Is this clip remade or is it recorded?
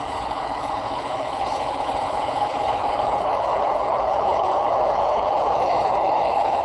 remade